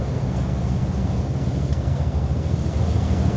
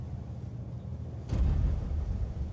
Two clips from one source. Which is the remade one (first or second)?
first